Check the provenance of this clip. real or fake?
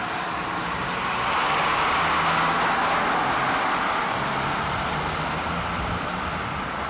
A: real